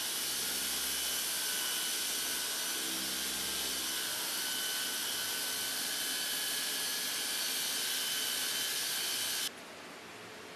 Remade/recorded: recorded